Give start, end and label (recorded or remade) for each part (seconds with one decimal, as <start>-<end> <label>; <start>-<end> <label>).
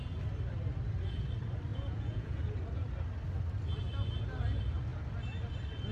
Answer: 0.0-1.7 recorded; 1.7-2.4 remade; 2.4-5.9 recorded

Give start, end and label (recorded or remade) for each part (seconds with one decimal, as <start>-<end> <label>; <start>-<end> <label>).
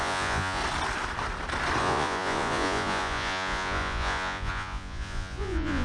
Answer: 0.0-0.6 remade; 0.6-1.8 recorded; 1.8-5.8 remade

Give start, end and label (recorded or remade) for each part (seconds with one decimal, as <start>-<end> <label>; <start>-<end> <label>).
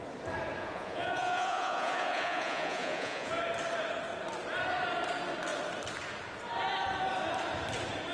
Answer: 0.0-0.6 recorded; 0.6-3.3 remade; 3.3-8.1 recorded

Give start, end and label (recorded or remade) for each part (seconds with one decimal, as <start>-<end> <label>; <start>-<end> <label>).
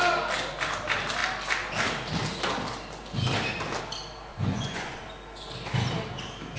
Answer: 0.0-4.3 recorded; 4.3-5.0 remade; 5.0-6.6 recorded